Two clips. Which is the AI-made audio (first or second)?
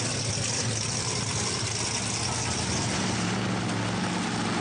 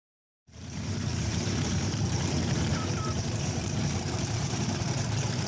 second